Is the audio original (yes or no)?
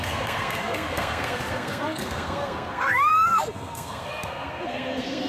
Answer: no